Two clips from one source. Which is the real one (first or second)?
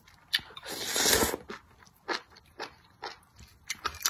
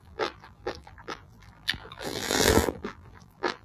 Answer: first